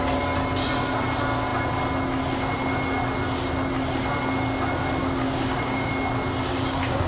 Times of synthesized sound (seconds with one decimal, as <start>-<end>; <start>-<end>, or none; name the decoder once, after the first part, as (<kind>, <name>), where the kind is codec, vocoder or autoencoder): 5.0-5.9 (codec, DAC); 6.5-7.1